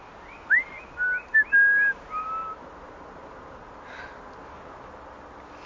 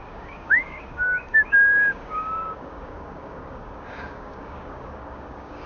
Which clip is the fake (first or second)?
second